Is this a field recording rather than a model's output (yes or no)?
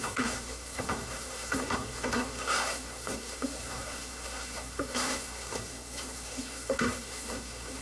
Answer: no